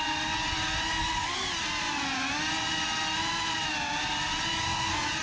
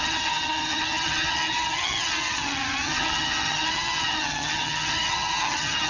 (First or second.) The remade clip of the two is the second